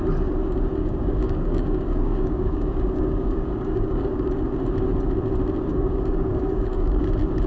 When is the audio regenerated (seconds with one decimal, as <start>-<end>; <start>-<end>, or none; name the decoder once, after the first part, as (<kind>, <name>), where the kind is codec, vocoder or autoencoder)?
0.8-4.3 (codec, DAC); 5.7-7.1